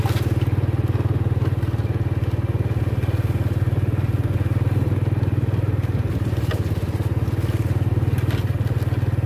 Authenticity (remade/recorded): recorded